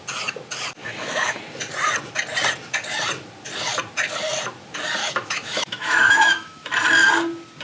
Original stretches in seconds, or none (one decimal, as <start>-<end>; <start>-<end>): 0.0-0.8; 1.4-5.0; 6.7-7.6